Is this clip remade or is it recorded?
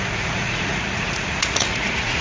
remade